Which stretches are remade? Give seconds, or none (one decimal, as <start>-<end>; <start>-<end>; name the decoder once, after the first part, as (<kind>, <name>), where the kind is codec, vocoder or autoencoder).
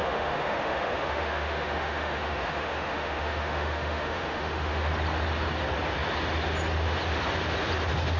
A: 0.0-4.9 (autoencoder, DAC-VAE)